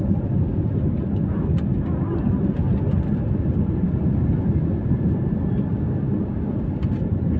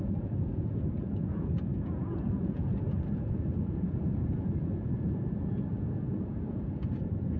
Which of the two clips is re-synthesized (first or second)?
second